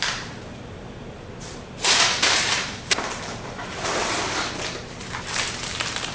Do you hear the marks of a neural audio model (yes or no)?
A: yes